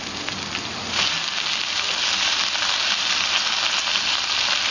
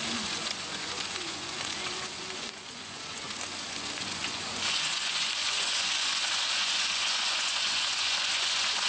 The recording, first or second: first